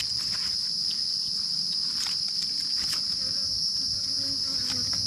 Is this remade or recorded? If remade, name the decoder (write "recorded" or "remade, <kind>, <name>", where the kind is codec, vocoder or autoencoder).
recorded